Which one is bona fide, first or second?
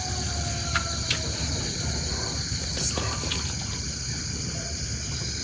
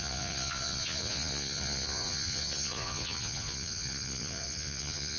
first